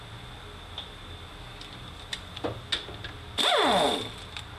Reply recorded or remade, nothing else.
recorded